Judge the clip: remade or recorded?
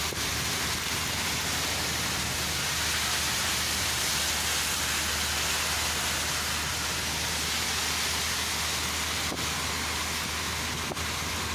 recorded